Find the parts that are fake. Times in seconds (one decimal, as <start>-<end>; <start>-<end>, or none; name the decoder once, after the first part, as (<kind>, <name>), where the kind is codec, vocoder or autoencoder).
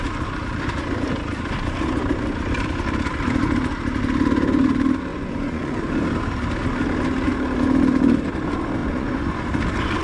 5.1-5.8 (vocoder, Vocos); 8.8-9.5